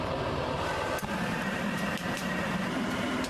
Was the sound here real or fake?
fake